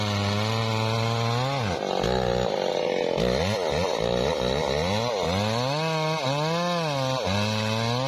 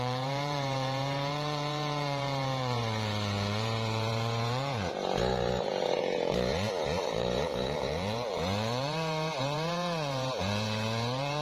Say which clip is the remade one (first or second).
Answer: second